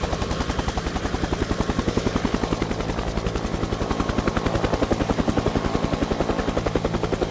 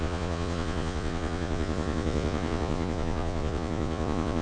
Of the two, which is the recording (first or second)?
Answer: first